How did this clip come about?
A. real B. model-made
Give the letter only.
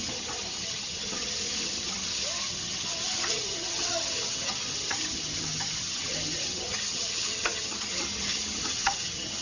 B